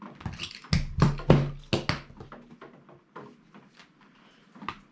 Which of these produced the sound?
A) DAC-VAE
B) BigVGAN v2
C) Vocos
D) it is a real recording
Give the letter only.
D